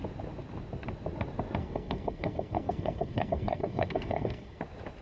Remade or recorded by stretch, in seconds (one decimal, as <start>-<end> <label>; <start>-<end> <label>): 0.0-1.6 recorded; 1.6-4.6 remade; 4.6-5.0 recorded

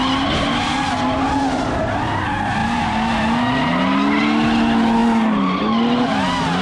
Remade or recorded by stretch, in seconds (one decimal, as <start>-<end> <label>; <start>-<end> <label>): 0.0-6.6 recorded